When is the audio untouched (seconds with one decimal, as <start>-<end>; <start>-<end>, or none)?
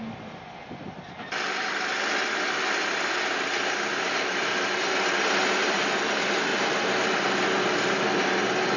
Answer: 0.0-8.8